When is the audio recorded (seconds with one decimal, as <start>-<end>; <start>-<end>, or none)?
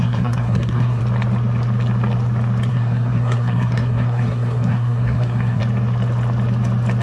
1.0-2.7; 5.6-7.0